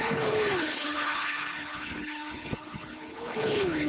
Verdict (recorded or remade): remade